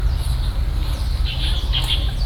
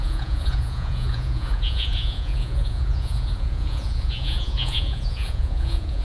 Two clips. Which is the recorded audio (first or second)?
first